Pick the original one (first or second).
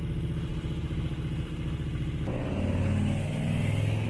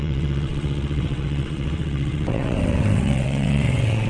first